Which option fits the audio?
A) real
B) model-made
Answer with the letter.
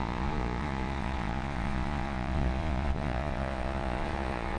B